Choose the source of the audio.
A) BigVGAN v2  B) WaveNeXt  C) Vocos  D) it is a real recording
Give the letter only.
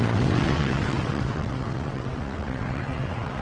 B